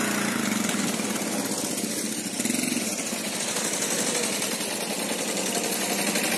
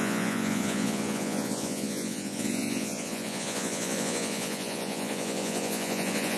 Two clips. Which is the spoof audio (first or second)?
second